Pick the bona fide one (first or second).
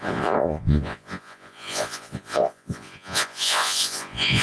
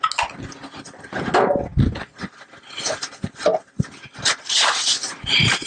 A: second